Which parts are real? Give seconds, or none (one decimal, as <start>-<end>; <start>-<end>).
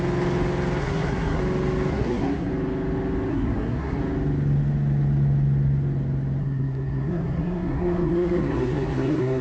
0.0-0.8; 1.4-1.9; 2.5-3.3; 4.0-6.4